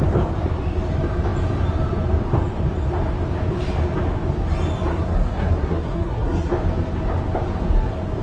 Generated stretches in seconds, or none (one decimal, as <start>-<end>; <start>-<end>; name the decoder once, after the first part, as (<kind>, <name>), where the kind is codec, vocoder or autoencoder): 4.9-6.5 (codec, SNAC)

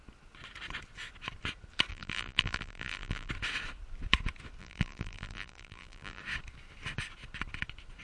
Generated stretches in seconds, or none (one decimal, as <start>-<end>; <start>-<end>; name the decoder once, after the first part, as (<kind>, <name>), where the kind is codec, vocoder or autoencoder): 1.9-3.3 (vocoder, BigVGAN v2); 4.6-6.2

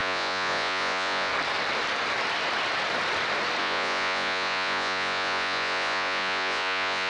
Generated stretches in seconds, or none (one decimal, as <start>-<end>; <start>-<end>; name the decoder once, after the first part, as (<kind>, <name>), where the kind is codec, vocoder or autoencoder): 0.0-1.3 (vocoder, Vocos); 3.6-7.1

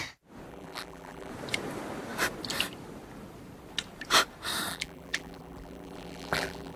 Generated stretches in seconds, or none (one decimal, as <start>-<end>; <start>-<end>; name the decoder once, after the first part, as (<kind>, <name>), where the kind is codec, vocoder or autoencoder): 0.5-1.3 (vocoder, BigVGAN v2); 4.7-6.8

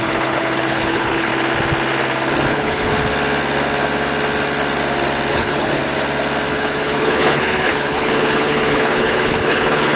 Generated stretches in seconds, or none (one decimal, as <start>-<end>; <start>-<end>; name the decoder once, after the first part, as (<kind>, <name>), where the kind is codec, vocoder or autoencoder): 0.0-1.3 (codec, HILCodec); 2.5-2.9; 5.3-5.8; 6.5-10.0